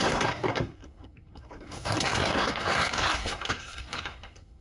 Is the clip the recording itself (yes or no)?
no